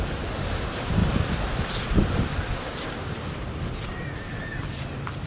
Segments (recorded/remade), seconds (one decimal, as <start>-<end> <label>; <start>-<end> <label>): 0.0-5.3 recorded